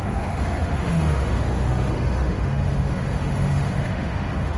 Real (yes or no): no